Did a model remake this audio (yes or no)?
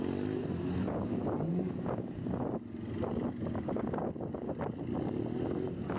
no